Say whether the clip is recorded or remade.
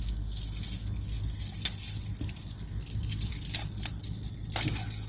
recorded